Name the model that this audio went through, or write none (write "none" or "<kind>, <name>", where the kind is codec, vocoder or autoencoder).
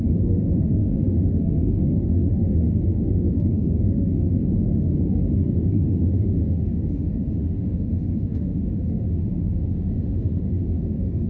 autoencoder, DAC-VAE